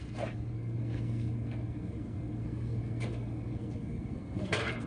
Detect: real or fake fake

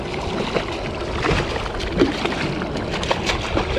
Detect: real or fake real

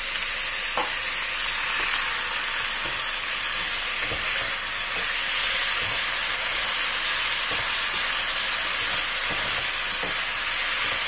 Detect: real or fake real